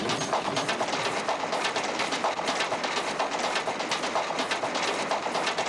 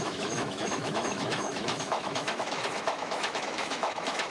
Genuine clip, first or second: first